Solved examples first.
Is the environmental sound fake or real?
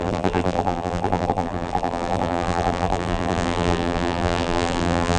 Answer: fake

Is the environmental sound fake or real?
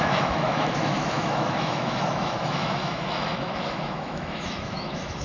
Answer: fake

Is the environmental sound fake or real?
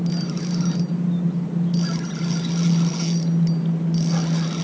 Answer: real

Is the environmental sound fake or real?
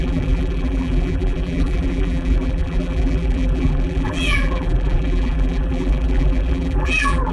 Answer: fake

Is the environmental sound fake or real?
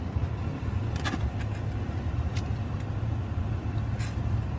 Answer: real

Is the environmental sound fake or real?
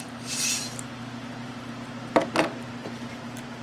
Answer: real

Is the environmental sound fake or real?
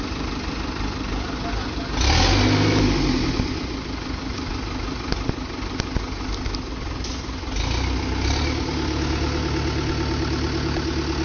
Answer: real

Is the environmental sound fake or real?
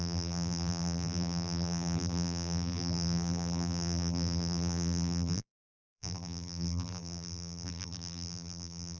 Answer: fake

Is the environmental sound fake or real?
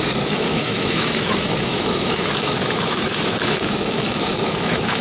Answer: fake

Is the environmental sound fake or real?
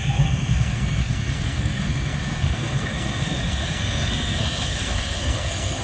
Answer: fake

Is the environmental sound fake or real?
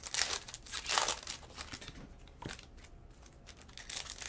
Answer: real